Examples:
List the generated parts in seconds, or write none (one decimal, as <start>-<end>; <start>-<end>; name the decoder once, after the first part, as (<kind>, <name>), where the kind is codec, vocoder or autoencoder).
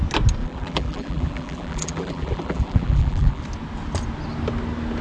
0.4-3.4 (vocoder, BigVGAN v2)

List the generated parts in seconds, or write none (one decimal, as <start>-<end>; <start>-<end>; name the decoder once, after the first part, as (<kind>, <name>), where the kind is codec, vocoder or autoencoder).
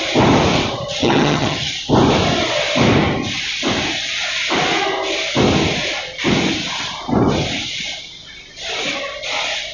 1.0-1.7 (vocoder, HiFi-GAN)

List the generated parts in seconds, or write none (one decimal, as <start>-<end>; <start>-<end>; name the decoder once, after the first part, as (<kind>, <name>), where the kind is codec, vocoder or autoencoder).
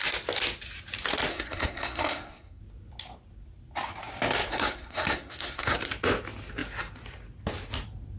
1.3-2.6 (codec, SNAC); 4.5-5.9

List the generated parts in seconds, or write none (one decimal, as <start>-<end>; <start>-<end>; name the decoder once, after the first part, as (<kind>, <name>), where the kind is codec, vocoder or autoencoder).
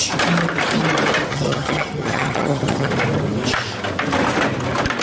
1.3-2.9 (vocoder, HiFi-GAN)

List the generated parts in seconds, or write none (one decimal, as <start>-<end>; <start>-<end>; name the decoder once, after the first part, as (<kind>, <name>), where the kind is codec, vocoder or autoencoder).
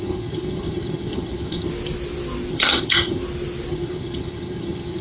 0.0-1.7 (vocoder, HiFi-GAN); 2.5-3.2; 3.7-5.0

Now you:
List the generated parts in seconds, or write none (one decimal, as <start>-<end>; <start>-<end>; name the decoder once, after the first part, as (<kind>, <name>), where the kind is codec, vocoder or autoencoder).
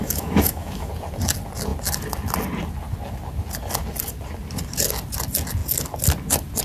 0.0-0.9 (autoencoder, DAC-VAE)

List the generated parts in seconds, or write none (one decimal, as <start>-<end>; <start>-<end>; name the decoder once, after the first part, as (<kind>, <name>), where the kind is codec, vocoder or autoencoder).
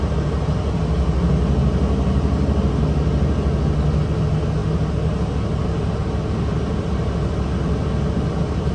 none